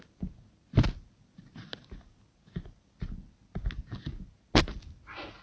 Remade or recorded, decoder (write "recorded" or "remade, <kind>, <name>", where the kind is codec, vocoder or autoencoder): recorded